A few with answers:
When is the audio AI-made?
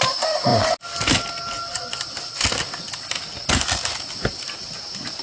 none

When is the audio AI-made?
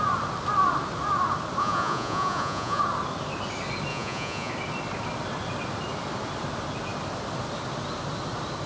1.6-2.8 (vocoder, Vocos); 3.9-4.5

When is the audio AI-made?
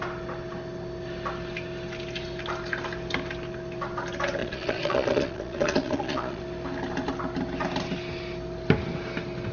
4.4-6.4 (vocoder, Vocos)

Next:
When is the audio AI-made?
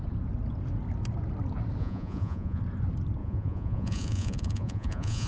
1.8-2.6 (vocoder, Vocos); 3.2-5.3